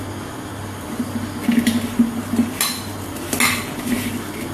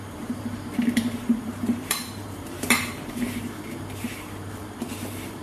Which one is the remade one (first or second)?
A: second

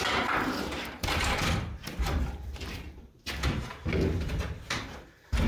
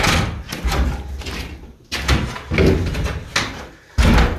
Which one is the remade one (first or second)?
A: first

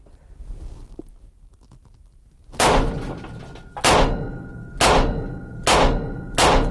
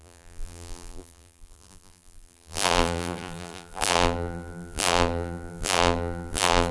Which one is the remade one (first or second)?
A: second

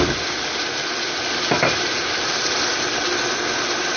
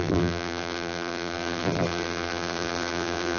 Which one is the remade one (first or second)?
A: second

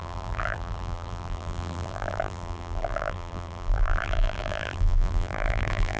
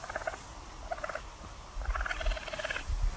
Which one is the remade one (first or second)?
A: first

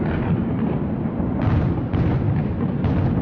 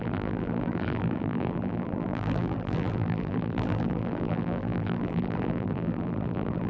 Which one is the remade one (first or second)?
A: second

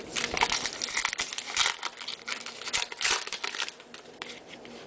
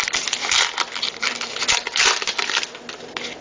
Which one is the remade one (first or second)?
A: first